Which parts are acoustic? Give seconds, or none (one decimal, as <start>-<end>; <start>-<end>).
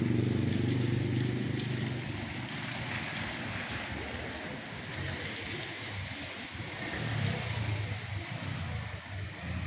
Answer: 0.0-9.7